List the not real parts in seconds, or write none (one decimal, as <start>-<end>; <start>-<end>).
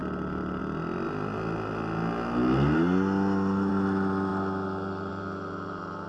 none